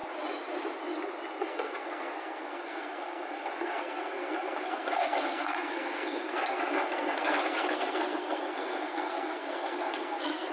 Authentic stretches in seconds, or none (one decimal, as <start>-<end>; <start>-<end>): 0.0-1.4